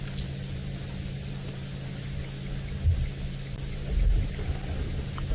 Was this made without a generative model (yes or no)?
yes